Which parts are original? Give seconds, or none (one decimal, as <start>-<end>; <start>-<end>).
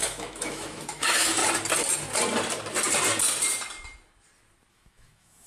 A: 1.4-4.7